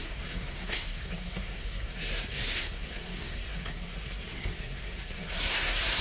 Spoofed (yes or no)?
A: yes